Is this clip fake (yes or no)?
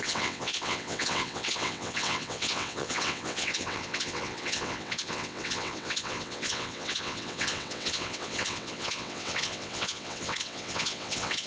yes